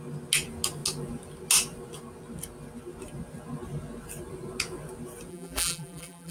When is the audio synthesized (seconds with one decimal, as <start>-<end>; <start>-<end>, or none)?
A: 5.3-6.3